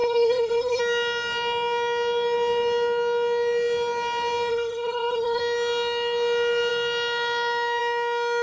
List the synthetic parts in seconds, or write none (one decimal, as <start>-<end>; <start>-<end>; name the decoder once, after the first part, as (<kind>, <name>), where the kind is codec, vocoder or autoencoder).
0.0-0.8 (codec, SNAC); 4.5-5.4